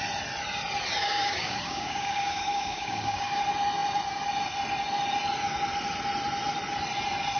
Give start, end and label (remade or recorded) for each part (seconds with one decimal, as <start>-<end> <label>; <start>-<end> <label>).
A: 0.0-1.0 recorded; 1.0-3.4 remade; 3.4-7.4 recorded